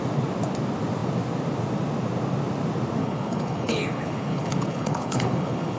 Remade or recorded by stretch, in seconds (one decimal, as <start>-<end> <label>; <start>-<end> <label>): 0.0-3.0 recorded; 3.0-5.8 remade